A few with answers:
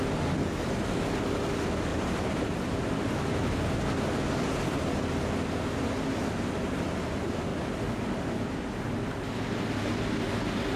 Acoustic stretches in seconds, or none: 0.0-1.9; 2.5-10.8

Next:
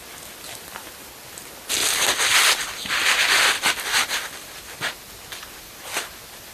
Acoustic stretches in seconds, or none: 0.0-1.8; 3.7-6.5

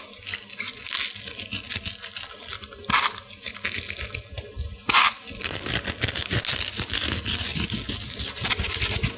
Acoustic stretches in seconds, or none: 0.0-9.2